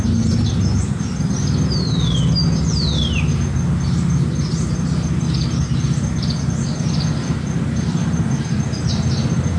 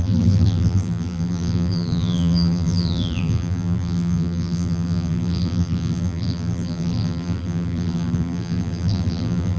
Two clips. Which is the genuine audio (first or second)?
first